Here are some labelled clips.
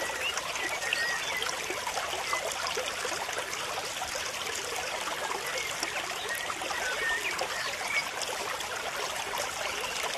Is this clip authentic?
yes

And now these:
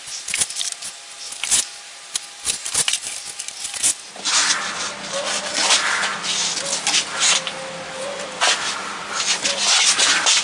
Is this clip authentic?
yes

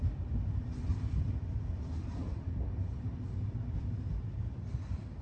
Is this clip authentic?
no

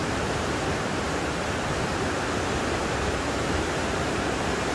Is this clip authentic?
no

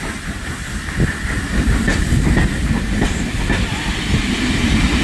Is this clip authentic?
no